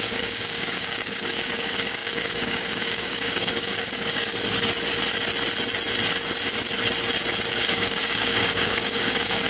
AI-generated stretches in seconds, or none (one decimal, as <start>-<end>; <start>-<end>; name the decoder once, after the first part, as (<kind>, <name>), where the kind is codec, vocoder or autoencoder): 0.0-4.3 (codec, DAC); 7.5-9.5